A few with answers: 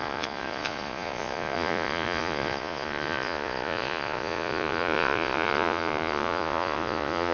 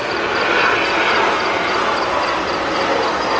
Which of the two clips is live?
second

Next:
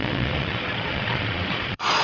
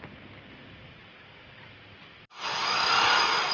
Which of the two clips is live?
second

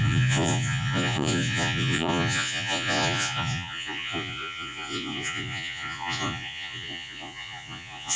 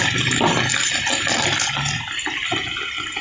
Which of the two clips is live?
second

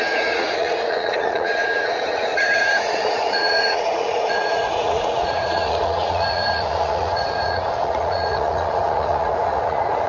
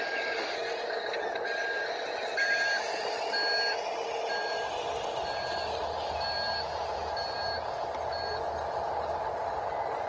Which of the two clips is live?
second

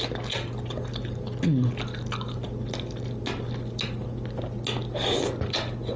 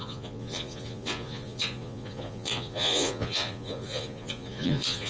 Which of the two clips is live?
first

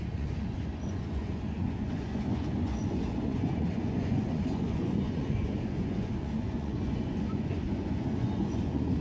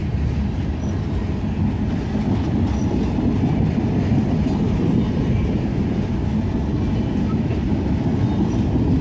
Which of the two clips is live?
second